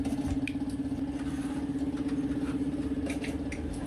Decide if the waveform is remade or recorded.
recorded